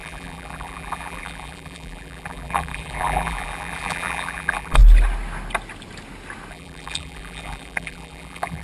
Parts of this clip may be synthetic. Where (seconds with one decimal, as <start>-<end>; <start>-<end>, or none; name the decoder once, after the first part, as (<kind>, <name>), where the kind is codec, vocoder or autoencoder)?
0.0-4.8 (vocoder, BigVGAN v2); 6.5-8.6